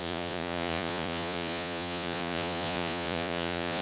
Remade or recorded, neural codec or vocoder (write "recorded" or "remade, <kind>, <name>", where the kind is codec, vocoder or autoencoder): remade, vocoder, Vocos